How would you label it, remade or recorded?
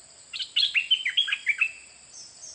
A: recorded